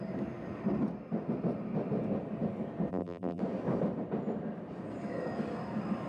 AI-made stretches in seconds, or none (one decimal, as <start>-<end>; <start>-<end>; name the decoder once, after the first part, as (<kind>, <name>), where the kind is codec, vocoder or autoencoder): 2.9-3.4 (vocoder, BigVGAN v2)